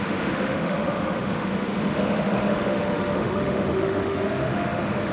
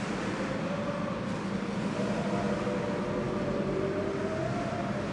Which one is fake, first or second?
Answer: first